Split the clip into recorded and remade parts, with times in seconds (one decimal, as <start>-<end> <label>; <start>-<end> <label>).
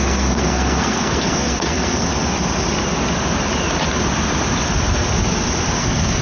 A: 0.0-2.1 remade; 2.1-5.8 recorded; 5.8-6.2 remade